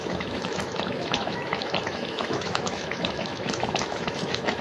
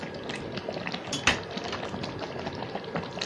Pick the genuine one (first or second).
second